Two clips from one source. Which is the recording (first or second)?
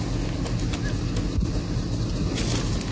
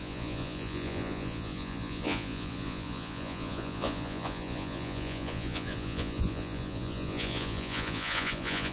first